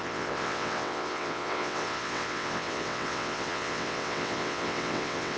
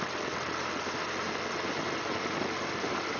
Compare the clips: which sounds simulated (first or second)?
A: first